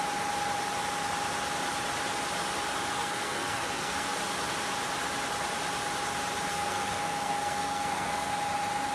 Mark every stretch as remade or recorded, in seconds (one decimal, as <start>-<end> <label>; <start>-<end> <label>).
0.0-2.9 recorded; 2.9-4.2 remade; 4.2-6.5 recorded; 6.5-8.3 remade; 8.3-8.9 recorded